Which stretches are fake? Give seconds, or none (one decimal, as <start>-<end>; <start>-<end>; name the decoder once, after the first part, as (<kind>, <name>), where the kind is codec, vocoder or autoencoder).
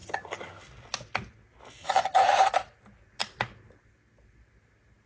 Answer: 0.0-0.6 (vocoder, HiFi-GAN); 1.8-2.4